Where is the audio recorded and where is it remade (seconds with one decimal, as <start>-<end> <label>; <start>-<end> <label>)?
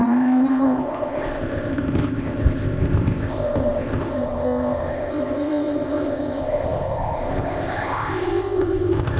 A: 0.0-9.2 remade